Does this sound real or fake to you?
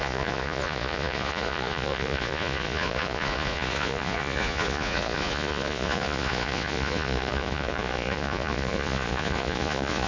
fake